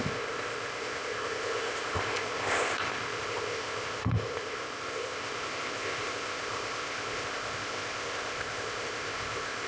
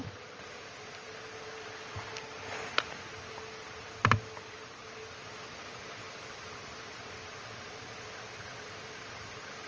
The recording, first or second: second